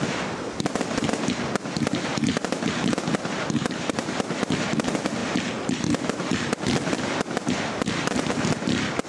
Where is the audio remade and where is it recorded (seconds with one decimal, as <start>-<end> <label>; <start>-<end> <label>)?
0.0-9.1 recorded